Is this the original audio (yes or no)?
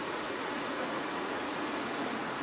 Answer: no